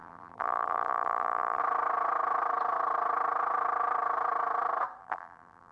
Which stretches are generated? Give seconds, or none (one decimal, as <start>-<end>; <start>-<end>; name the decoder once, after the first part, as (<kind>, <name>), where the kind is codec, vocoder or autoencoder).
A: 0.0-1.6 (vocoder, BigVGAN v2); 5.0-5.7